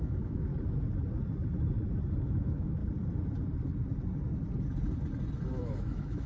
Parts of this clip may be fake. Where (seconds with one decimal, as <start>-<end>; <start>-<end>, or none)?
0.0-0.5; 2.2-2.8; 5.5-6.3